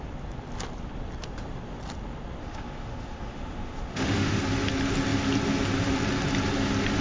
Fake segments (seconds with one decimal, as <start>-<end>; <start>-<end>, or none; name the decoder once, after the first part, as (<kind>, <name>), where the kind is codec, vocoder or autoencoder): 2.4-4.4 (autoencoder, DAC-VAE)